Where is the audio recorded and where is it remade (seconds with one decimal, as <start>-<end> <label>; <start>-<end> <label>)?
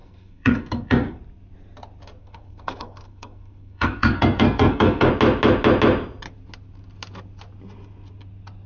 0.0-1.2 remade; 1.2-2.2 recorded; 2.2-5.1 remade; 5.1-8.7 recorded